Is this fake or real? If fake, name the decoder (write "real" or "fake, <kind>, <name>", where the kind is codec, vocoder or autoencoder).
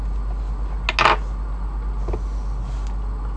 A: real